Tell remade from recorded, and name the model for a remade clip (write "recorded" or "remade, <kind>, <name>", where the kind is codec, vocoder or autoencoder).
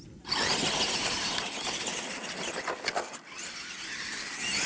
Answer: recorded